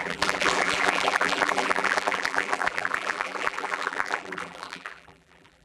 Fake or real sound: fake